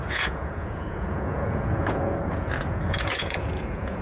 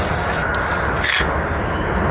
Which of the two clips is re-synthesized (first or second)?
first